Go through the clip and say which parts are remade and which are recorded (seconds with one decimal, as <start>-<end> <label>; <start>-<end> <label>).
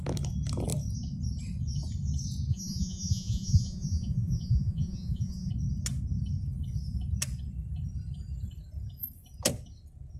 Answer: 0.0-2.5 recorded; 2.5-5.5 remade; 5.5-10.2 recorded